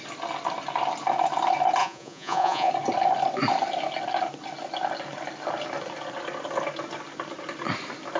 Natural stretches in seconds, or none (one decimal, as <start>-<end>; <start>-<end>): 0.0-1.8; 2.7-8.2